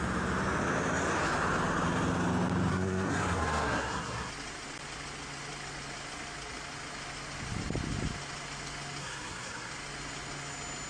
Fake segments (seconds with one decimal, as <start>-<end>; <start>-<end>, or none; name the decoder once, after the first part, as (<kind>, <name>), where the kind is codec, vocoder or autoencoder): 2.7-4.3 (codec, SNAC); 9.0-9.7

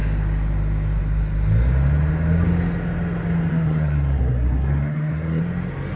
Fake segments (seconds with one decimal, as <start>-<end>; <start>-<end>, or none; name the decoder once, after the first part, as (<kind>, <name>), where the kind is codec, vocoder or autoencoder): 3.5-5.4 (codec, SNAC)

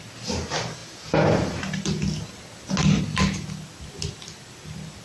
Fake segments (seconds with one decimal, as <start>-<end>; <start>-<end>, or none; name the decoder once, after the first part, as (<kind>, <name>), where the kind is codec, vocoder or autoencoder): none

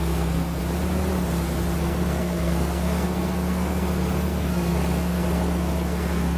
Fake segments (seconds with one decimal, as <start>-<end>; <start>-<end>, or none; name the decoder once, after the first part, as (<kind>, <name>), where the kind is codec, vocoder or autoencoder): 0.0-0.6 (codec, SNAC); 1.8-6.4